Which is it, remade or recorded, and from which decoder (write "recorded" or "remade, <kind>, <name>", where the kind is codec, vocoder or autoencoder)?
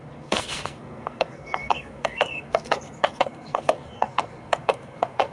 remade, codec, SNAC